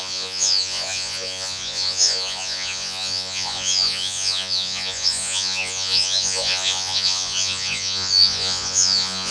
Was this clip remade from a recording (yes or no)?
yes